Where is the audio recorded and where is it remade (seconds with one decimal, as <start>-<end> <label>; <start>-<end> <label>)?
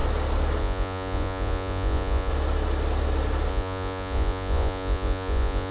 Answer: 0.0-0.6 recorded; 0.6-2.3 remade; 2.3-3.5 recorded; 3.5-5.7 remade